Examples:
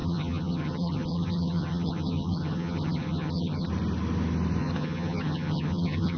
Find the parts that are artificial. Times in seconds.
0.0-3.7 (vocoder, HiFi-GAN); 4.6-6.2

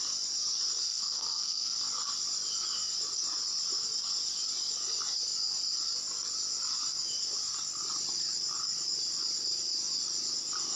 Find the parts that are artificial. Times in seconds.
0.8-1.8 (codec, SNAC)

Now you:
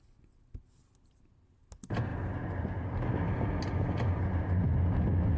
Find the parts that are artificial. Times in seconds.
none

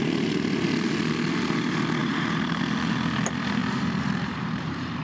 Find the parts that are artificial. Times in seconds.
2.0-2.6 (vocoder, BigVGAN v2); 3.6-5.0

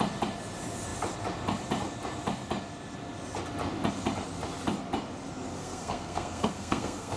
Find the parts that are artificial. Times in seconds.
5.6-7.2 (codec, SNAC)